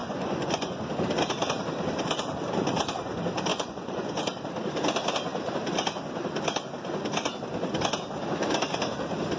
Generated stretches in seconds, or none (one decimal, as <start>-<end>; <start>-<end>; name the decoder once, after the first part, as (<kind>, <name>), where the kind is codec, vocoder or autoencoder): 0.0-0.8 (vocoder, Vocos); 3.5-4.2